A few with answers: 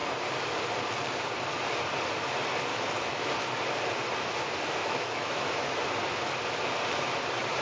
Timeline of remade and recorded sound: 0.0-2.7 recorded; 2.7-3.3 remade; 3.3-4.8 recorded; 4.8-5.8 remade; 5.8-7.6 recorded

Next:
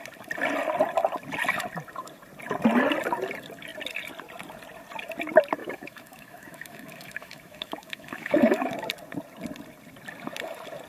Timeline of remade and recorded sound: 0.0-5.6 recorded; 5.6-8.7 remade; 8.7-10.9 recorded

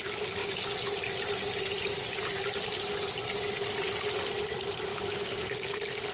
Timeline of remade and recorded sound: 0.0-4.9 recorded; 4.9-5.5 remade; 5.5-6.1 recorded